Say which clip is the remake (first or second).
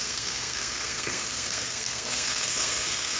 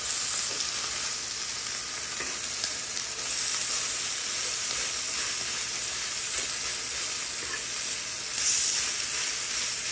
first